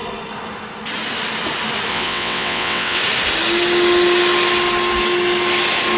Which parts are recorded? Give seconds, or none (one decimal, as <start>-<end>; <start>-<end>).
0.0-1.9; 3.0-6.0